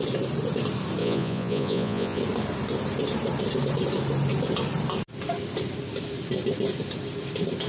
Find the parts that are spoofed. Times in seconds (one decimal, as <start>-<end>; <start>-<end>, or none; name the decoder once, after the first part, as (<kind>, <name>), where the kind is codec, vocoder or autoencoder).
1.0-2.2 (vocoder, Vocos)